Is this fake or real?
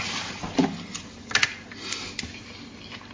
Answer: real